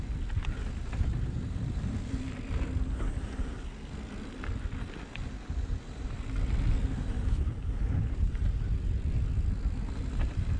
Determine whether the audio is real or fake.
real